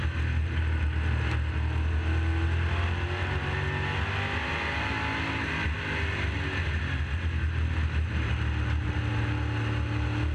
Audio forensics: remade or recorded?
recorded